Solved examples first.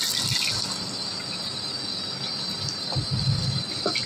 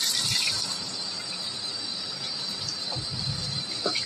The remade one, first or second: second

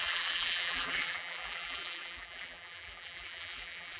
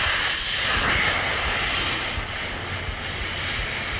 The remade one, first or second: first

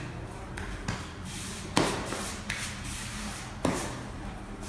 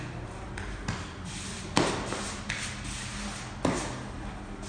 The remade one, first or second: first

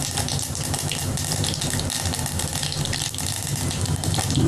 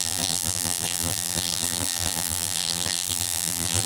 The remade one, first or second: second